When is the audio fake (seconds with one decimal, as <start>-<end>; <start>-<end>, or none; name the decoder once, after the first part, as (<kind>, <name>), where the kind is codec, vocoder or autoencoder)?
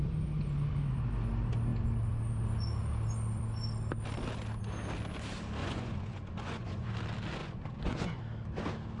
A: 5.6-6.9 (vocoder, Vocos); 7.4-8.2